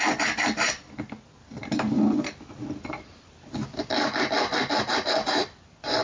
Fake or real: real